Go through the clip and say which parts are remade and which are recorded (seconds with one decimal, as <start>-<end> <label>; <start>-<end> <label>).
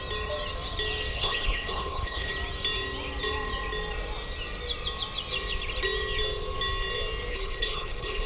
0.0-1.1 recorded; 1.1-2.3 remade; 2.3-7.3 recorded; 7.3-8.3 remade